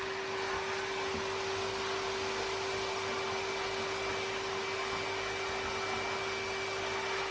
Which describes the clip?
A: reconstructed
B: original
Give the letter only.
B